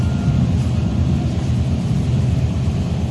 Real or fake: fake